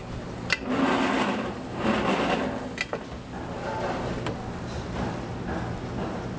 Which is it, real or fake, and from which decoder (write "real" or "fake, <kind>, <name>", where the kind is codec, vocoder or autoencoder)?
real